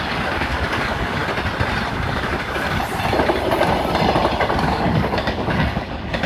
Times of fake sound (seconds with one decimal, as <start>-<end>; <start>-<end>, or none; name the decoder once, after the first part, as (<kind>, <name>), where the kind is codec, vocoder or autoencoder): 0.0-1.2 (codec, DAC); 1.9-2.8; 4.6-6.3